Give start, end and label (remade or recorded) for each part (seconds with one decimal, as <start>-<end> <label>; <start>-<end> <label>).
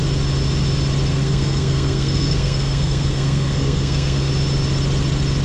0.0-1.1 recorded; 1.1-4.3 remade; 4.3-5.4 recorded